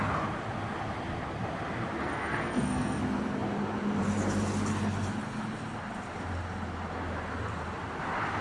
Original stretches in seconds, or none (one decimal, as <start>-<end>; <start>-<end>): 0.0-2.0; 3.0-8.4